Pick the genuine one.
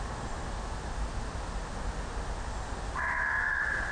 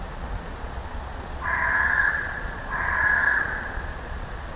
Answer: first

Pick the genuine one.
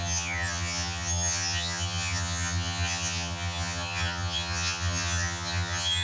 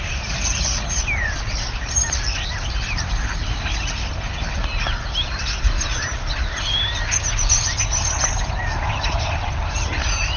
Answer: second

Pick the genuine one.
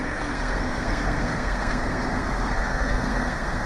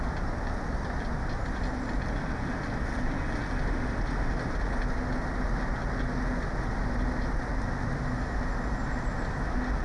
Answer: second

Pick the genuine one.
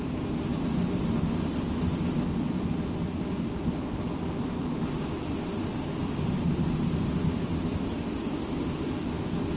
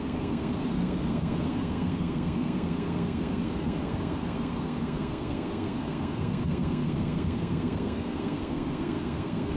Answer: first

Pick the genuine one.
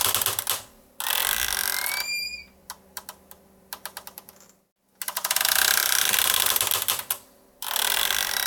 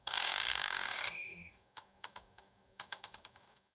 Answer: first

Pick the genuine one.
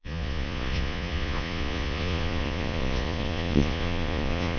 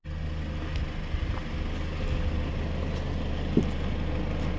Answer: second